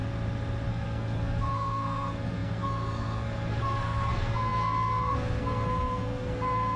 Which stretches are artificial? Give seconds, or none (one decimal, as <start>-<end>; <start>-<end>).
0.7-6.8